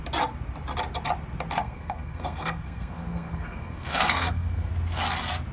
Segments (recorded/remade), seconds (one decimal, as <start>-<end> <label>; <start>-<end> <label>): 0.0-1.6 recorded; 1.6-4.7 remade; 4.7-5.5 recorded